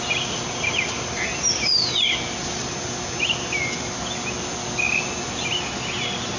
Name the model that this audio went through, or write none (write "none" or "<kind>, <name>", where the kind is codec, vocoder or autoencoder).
none